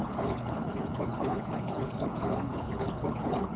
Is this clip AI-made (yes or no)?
yes